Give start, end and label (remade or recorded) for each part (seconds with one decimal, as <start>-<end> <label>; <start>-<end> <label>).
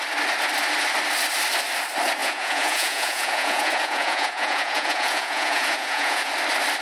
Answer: 0.0-2.2 recorded; 2.2-6.3 remade; 6.3-6.8 recorded